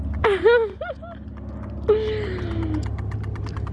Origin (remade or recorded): recorded